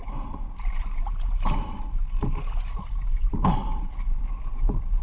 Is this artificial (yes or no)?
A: no